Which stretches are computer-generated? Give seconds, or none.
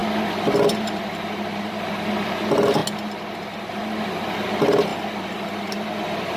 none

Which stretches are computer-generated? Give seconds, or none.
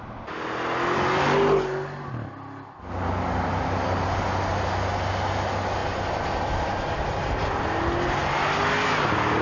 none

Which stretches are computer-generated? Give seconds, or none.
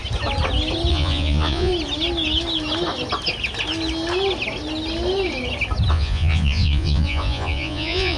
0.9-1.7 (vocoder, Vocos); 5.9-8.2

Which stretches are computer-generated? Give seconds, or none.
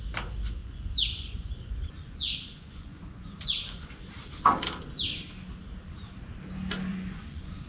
0.6-3.9 (vocoder, Vocos); 6.9-7.7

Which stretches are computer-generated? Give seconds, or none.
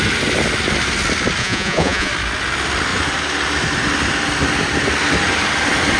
1.4-2.1 (vocoder, Vocos)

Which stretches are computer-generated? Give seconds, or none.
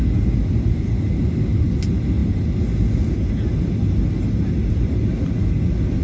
none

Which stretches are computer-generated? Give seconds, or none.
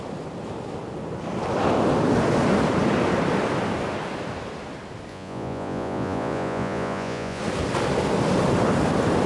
5.1-7.4 (vocoder, Vocos)